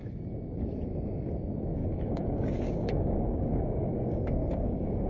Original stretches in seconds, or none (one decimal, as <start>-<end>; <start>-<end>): 0.0-1.8